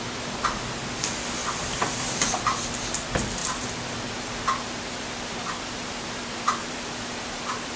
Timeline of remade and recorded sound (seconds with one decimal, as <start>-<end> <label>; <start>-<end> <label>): 0.0-1.4 recorded; 1.4-3.0 remade; 3.0-3.4 recorded; 3.4-7.8 remade